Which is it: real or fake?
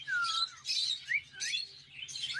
real